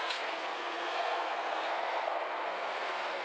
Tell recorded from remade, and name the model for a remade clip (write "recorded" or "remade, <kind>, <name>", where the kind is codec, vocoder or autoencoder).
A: remade, codec, SNAC